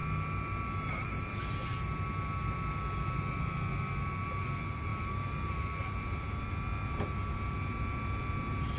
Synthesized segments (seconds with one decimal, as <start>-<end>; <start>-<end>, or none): none